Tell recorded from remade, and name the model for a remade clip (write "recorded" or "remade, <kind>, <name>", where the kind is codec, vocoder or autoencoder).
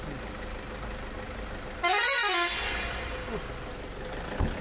recorded